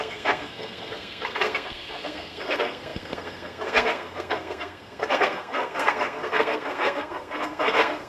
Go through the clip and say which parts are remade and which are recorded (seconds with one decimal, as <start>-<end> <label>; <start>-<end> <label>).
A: 0.0-8.1 remade